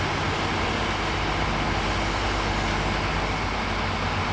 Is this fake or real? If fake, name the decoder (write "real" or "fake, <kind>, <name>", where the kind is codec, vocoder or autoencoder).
real